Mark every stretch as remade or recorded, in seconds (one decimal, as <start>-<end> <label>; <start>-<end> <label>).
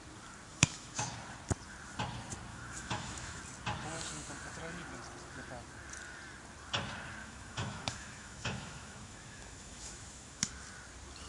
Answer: 0.0-0.5 recorded; 0.5-1.0 remade; 1.0-2.5 recorded; 2.5-3.4 remade; 3.4-7.2 recorded; 7.2-10.5 remade; 10.5-11.3 recorded